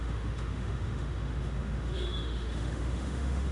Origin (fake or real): fake